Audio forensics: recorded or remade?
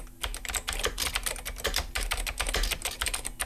recorded